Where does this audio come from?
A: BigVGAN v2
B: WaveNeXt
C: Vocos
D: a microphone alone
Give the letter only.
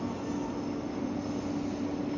D